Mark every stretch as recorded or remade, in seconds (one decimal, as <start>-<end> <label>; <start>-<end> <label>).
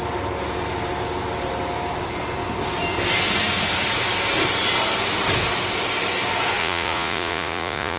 0.0-6.6 recorded; 6.6-8.0 remade